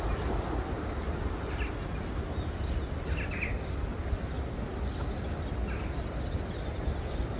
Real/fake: real